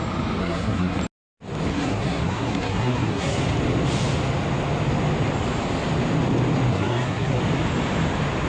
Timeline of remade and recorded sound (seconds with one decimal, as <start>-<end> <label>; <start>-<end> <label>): 0.0-0.4 recorded; 0.4-1.0 remade; 1.0-1.7 recorded; 1.7-3.4 remade; 3.4-6.7 recorded; 6.7-7.4 remade; 7.4-8.5 recorded